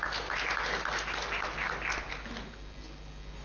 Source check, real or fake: real